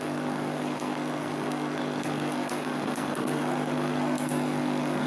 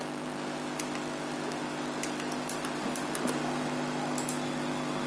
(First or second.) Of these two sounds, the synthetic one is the first